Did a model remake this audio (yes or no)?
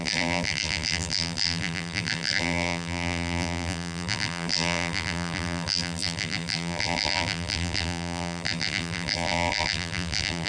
yes